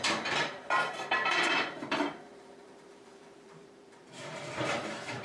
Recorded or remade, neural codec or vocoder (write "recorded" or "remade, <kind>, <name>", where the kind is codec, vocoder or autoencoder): remade, vocoder, BigVGAN v2